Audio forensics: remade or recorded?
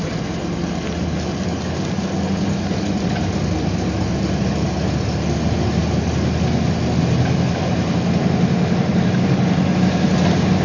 recorded